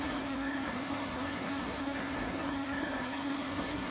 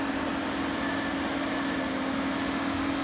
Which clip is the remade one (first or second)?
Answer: first